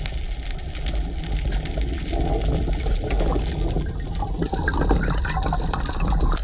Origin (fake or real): real